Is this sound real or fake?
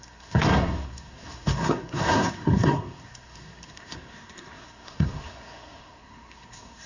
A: fake